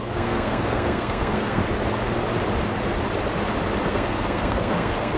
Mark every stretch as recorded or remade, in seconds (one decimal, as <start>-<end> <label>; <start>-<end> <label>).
0.0-1.6 remade; 1.6-3.9 recorded; 3.9-5.2 remade